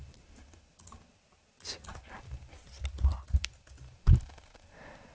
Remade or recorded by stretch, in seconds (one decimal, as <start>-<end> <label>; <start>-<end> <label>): 0.0-5.1 recorded